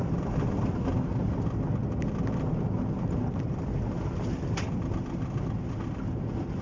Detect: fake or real real